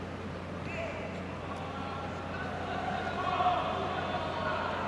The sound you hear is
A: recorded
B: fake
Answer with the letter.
A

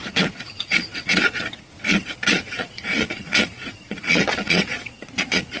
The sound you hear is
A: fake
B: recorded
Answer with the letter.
A